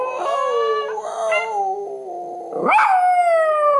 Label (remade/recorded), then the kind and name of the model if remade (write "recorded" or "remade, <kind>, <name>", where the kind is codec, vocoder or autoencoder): recorded